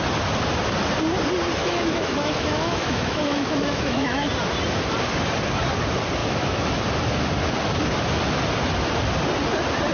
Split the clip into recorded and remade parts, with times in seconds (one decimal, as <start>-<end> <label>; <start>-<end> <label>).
0.0-1.6 recorded; 1.6-4.3 remade; 4.3-6.2 recorded; 6.2-6.7 remade; 6.7-9.9 recorded